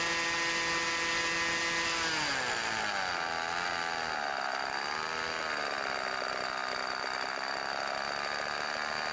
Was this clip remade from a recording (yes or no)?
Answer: no